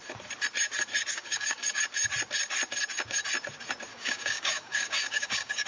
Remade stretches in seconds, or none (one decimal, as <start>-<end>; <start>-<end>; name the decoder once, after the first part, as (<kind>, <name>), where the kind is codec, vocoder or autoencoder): 1.1-1.8 (codec, DAC); 3.9-5.7